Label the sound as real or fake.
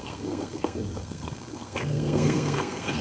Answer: fake